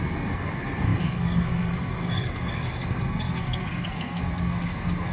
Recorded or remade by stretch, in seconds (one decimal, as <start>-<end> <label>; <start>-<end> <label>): 0.0-5.1 remade